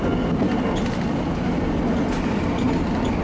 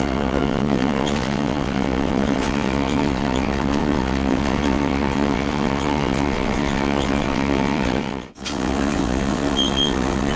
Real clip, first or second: first